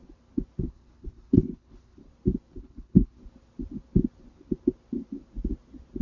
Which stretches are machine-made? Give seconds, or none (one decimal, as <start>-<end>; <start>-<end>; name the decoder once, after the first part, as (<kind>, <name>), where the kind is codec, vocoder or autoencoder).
0.7-2.0 (codec, HILCodec); 2.6-3.2